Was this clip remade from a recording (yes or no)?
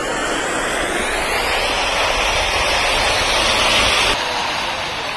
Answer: no